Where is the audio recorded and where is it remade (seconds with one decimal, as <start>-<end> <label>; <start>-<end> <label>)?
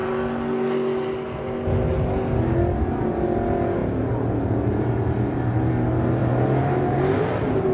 0.0-3.8 recorded; 3.8-5.7 remade; 5.7-6.2 recorded; 6.2-7.2 remade; 7.2-7.7 recorded